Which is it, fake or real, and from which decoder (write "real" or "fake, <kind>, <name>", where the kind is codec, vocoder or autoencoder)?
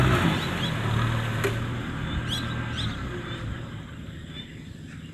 real